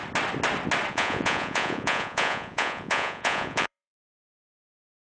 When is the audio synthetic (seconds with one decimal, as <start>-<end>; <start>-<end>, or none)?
0.9-5.0